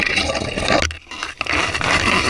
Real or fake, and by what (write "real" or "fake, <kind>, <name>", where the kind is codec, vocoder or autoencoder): real